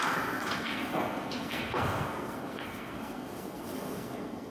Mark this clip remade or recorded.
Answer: remade